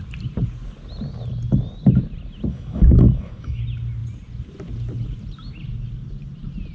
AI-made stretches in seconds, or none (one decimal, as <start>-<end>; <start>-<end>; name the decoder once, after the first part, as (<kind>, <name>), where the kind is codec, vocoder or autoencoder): 2.5-3.6 (autoencoder, DAC-VAE)